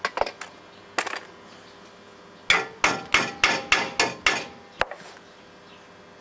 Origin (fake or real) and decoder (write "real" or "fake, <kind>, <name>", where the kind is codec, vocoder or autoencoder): real